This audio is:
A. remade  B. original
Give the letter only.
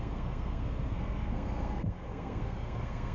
A